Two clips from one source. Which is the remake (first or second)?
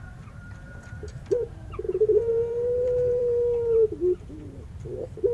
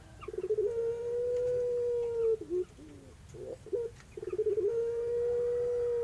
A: first